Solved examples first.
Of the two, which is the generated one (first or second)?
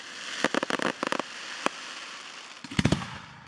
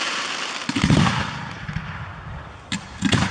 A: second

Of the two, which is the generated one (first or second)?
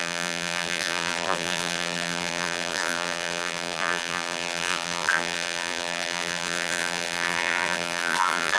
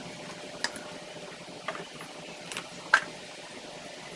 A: first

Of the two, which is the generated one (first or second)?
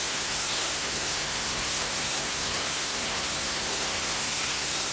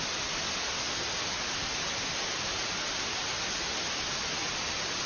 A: first